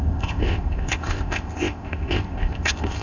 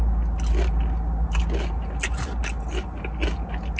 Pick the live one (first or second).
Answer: second